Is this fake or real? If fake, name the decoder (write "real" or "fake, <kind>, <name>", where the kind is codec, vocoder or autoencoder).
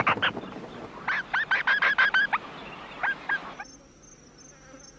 real